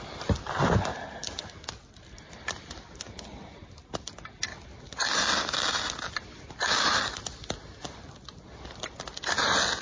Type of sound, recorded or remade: recorded